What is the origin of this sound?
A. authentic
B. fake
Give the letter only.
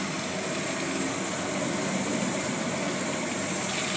A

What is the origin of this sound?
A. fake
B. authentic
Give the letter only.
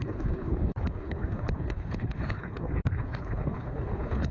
A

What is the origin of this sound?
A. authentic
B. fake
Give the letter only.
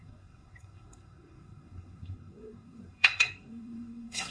B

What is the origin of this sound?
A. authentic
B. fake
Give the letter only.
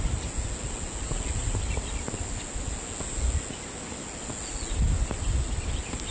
A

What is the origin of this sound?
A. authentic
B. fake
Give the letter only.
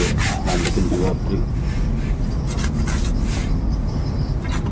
A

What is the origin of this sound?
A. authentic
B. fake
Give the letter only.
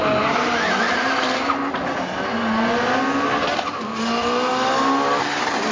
A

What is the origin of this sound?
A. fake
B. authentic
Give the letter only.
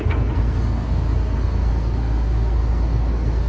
A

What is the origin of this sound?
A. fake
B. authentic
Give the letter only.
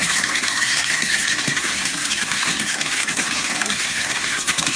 A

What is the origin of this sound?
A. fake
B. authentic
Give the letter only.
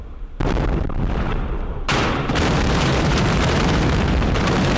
A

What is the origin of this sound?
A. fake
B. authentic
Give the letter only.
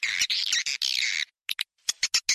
B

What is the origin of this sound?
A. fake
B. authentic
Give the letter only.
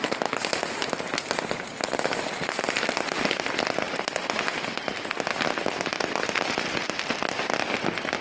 B